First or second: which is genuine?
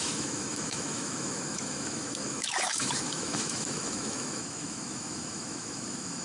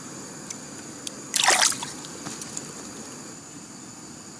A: second